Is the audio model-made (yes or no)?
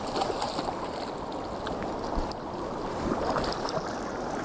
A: no